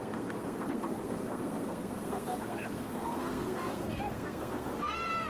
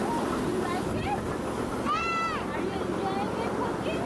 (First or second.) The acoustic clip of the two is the second